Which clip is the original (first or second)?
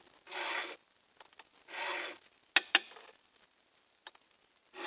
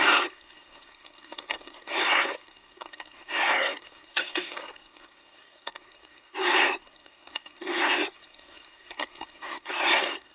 first